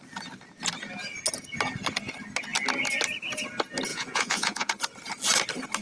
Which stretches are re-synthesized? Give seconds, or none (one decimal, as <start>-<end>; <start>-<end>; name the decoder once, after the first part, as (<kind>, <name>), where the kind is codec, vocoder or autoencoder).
3.9-4.7 (vocoder, Vocos)